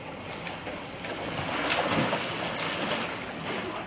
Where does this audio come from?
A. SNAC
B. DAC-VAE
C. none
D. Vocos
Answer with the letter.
C